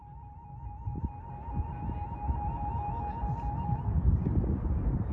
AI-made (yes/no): no